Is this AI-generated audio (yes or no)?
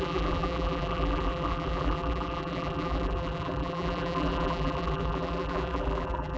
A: yes